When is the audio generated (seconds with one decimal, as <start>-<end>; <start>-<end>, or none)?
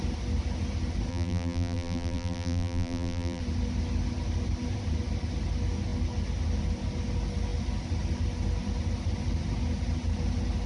1.1-3.4